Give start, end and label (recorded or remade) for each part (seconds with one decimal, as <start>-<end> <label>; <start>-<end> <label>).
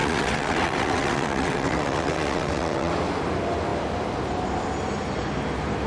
0.0-2.9 remade; 2.9-5.9 recorded